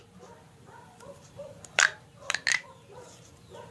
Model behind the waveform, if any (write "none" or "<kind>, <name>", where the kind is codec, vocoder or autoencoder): vocoder, BigVGAN v2